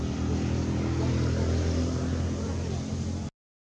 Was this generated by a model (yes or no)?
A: no